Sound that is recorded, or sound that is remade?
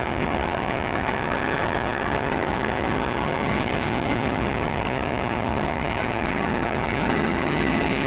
remade